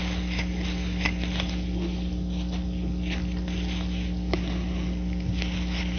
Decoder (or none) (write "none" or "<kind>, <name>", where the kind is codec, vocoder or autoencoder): none